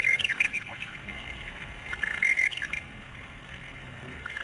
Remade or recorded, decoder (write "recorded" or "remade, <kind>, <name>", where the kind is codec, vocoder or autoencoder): remade, codec, SNAC